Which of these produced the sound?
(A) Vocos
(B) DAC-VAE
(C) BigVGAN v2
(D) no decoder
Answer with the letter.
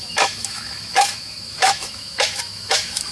B